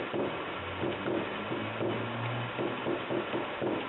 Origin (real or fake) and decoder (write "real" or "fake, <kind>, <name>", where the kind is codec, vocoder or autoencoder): real